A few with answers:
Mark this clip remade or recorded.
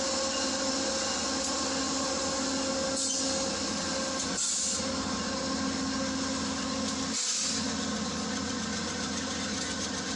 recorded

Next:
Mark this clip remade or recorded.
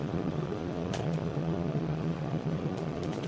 remade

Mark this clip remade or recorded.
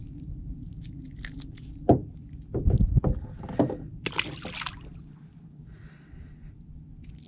recorded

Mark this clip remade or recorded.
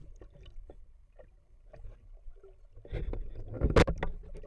recorded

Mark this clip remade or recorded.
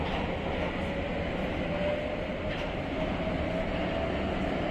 recorded